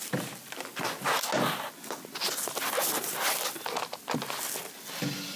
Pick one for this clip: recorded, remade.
recorded